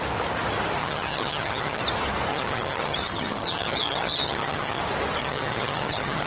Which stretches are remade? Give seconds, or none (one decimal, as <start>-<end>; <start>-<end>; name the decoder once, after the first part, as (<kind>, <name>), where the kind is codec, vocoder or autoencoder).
0.8-1.8 (vocoder, HiFi-GAN); 2.3-4.8; 5.2-6.3